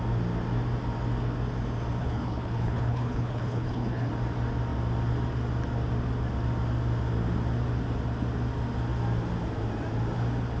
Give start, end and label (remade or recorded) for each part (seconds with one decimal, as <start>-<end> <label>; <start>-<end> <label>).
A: 0.0-2.0 recorded; 2.0-4.1 remade; 4.1-10.6 recorded